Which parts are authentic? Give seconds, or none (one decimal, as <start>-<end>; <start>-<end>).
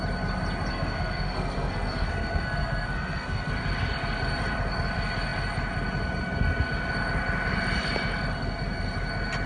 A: 0.0-0.7; 3.5-9.5